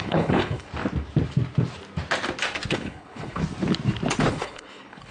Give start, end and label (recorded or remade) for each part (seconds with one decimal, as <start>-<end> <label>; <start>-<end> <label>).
0.0-0.7 remade; 0.7-2.7 recorded; 2.7-3.4 remade; 3.4-4.3 recorded; 4.3-5.1 remade